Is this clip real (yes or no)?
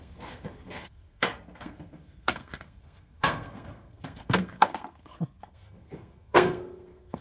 no